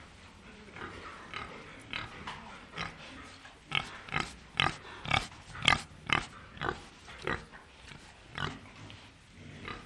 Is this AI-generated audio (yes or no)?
no